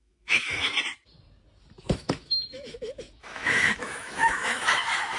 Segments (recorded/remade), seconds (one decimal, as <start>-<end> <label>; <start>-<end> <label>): 0.0-0.7 remade; 0.7-1.8 recorded; 1.8-5.2 remade